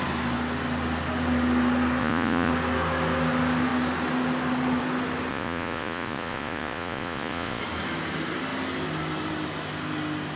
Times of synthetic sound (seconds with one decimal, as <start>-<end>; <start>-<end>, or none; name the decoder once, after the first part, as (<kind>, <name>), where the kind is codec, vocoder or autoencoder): 2.0-2.5 (vocoder, Vocos); 5.3-7.6